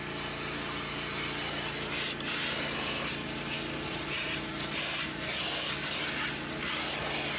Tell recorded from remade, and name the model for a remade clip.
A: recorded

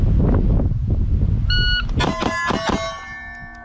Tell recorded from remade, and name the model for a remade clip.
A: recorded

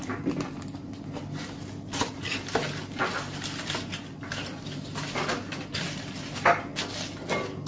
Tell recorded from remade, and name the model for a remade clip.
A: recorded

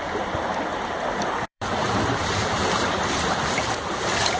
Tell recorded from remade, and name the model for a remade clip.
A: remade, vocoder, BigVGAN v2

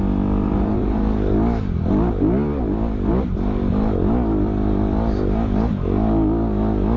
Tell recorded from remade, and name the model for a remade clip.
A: recorded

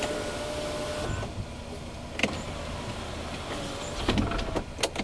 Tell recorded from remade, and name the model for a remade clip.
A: recorded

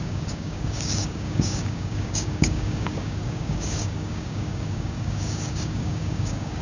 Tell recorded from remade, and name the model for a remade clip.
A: remade, codec, DAC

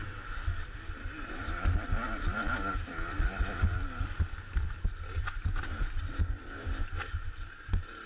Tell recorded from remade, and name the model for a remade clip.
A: recorded